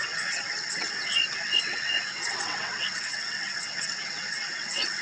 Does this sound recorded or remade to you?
remade